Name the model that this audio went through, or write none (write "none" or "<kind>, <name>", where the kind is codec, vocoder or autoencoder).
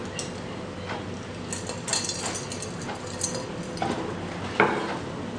none